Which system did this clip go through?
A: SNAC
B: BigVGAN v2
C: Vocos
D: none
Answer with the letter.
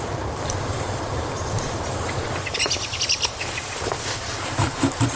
B